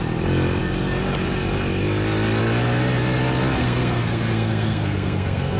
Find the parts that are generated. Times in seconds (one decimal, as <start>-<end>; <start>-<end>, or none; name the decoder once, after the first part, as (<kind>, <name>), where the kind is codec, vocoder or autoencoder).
3.6-5.6 (codec, SNAC)